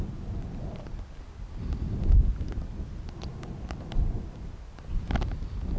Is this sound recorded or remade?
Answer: recorded